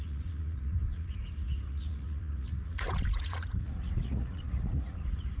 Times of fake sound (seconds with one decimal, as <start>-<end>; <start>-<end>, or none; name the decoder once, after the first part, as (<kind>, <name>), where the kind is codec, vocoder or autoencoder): 0.0-5.4 (vocoder, Vocos)